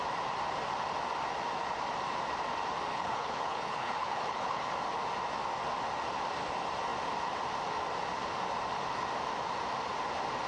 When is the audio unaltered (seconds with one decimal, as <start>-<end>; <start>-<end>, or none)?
0.0-2.9; 4.7-10.5